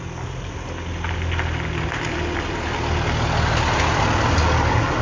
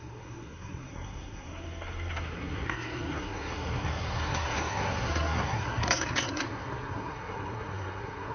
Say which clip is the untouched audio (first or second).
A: first